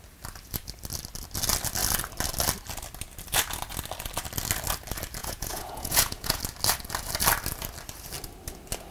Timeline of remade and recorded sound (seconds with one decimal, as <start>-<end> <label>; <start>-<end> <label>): 0.0-5.2 recorded; 5.2-6.4 remade; 6.4-8.9 recorded